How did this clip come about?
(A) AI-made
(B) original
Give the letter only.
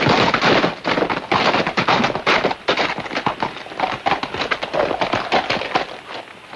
B